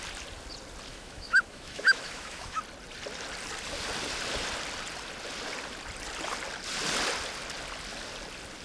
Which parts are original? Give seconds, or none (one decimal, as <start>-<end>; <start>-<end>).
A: 0.0-0.9; 2.6-8.6